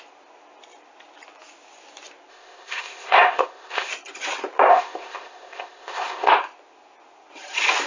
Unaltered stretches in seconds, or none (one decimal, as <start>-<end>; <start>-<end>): 0.0-2.3; 3.9-4.7; 6.3-7.9